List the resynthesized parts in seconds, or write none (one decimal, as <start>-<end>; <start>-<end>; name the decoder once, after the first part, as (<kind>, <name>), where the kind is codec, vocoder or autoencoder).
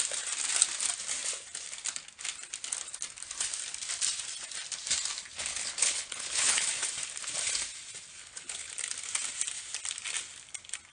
5.5-6.7 (codec, HILCodec); 8.2-8.7